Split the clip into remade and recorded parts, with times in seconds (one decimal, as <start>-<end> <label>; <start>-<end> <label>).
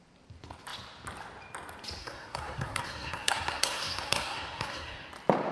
0.0-2.0 recorded; 2.0-5.1 remade; 5.1-5.5 recorded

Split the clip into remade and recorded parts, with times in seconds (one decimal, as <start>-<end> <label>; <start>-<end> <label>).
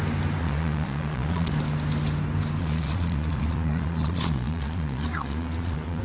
0.0-0.4 recorded; 0.4-1.5 remade; 1.5-2.6 recorded; 2.6-6.0 remade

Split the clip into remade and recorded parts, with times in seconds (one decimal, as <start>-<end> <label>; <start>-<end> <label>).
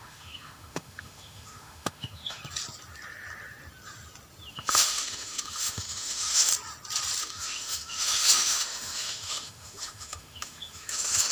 0.0-2.4 remade; 2.4-4.5 recorded; 4.5-6.5 remade; 6.5-7.2 recorded; 7.2-11.3 remade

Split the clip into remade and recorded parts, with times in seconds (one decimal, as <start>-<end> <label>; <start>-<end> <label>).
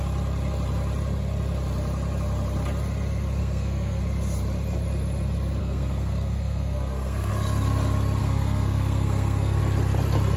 0.0-3.4 recorded; 3.4-4.0 remade; 4.0-5.6 recorded; 5.6-7.3 remade; 7.3-8.2 recorded; 8.2-9.6 remade; 9.6-10.4 recorded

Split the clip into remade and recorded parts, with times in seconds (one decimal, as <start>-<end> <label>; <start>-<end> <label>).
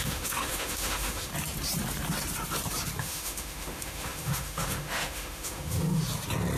0.0-1.3 remade; 1.3-3.0 recorded; 3.0-6.0 remade; 6.0-6.6 recorded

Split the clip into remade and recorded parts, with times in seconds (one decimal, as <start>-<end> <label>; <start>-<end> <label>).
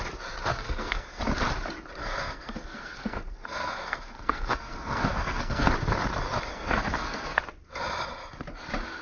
0.0-0.5 recorded; 0.5-1.2 remade; 1.2-2.0 recorded; 2.0-5.7 remade; 5.7-6.5 recorded; 6.5-7.4 remade; 7.4-9.0 recorded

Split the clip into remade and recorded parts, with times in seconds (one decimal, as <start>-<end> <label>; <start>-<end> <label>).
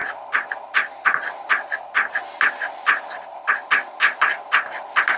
0.0-5.2 recorded